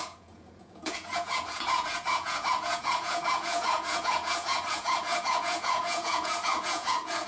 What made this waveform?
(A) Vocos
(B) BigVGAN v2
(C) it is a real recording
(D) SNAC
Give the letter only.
A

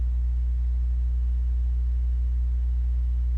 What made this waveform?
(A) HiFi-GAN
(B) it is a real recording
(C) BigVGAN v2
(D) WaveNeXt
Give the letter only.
B